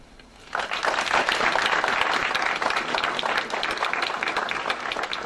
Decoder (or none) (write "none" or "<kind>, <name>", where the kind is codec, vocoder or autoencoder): none